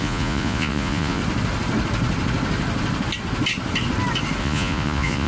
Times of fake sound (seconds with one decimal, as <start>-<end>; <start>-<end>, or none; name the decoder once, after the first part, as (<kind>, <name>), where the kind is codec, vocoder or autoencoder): 0.0-1.2 (vocoder, Vocos); 4.4-5.3